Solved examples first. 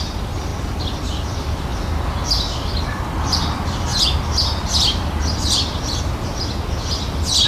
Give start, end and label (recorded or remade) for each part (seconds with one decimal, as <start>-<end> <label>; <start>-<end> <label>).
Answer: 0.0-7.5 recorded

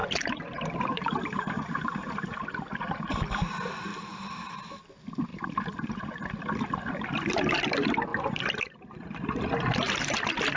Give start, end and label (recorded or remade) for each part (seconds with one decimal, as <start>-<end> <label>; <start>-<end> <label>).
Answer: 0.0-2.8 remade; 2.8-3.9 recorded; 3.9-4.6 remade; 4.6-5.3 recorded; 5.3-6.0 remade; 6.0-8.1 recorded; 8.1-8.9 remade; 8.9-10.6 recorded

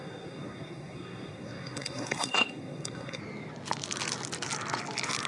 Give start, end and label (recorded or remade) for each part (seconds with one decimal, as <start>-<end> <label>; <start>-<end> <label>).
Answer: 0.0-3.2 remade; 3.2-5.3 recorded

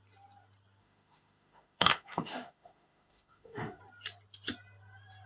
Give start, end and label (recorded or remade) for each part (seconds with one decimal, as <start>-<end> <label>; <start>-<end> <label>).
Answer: 0.0-0.8 recorded; 0.8-3.8 remade; 3.8-5.3 recorded

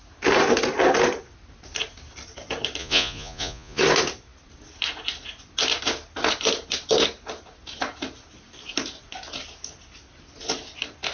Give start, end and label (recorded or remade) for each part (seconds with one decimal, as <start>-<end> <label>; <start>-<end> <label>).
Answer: 0.0-2.8 recorded; 2.8-3.8 remade; 3.8-11.1 recorded